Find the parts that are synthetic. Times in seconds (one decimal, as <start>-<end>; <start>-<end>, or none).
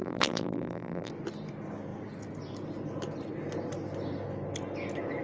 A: 0.0-1.1